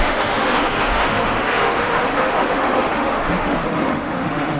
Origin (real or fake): fake